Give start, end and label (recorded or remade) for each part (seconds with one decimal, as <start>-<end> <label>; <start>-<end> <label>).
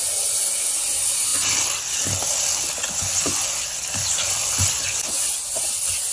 0.0-6.1 recorded